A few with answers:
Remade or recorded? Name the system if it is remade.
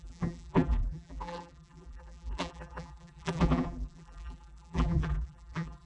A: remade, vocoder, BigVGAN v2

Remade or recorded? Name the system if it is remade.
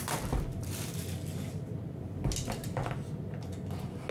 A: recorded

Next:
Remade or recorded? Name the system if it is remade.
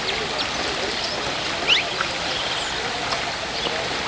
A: recorded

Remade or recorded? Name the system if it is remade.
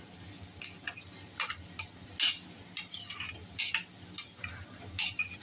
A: recorded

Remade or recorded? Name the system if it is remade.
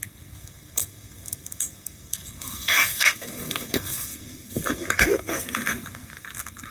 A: remade, codec, SNAC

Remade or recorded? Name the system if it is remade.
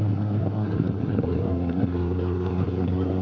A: remade, codec, SNAC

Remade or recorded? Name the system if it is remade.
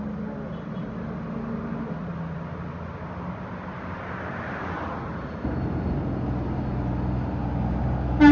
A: recorded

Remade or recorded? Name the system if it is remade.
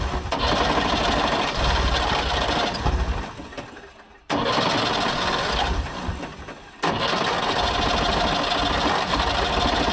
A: recorded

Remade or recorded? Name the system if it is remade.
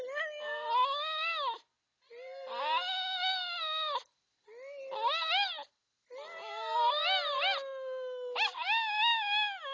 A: recorded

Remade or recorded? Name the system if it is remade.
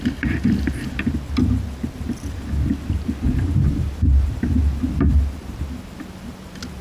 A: recorded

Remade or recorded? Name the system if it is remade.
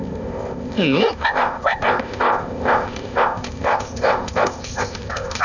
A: remade, codec, ZipCodec